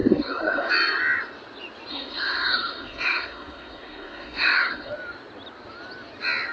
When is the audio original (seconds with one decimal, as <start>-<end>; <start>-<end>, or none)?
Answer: 0.7-1.9; 4.9-6.5